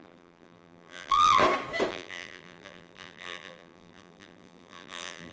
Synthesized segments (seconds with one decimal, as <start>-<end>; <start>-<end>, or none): 0.0-1.4; 1.9-5.3